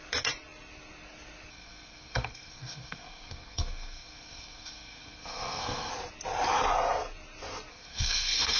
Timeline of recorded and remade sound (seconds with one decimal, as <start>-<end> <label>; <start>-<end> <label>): 0.0-1.5 recorded; 1.5-5.9 remade; 5.9-7.7 recorded; 7.7-8.6 remade